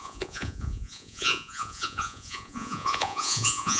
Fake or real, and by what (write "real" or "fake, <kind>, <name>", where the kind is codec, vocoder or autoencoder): fake, vocoder, Vocos